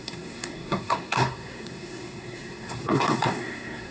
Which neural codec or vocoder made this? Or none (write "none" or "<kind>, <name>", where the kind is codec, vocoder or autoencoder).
codec, SNAC